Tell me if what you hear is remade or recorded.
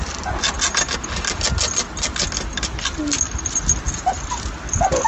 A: recorded